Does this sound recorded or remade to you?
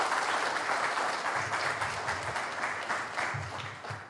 recorded